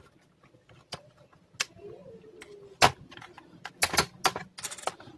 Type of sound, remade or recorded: recorded